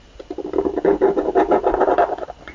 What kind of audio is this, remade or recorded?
recorded